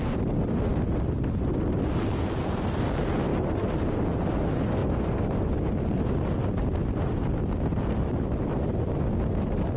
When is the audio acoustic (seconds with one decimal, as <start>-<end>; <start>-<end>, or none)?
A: 0.0-4.8; 5.5-9.8